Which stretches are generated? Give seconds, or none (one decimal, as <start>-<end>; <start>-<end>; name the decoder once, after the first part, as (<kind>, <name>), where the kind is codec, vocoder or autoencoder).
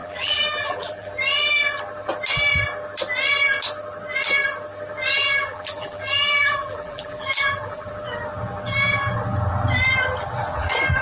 0.0-1.1 (vocoder, BigVGAN v2); 5.1-7.9